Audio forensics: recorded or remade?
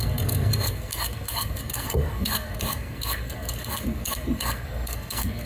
remade